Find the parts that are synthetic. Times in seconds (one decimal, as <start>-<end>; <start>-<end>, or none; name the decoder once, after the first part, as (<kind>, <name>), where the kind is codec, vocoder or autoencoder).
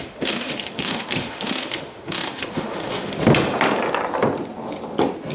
0.0-3.2 (autoencoder, DAC-VAE)